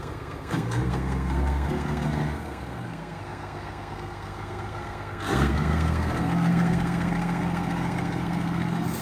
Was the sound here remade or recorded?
remade